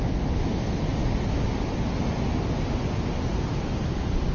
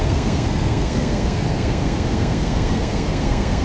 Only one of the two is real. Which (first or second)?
first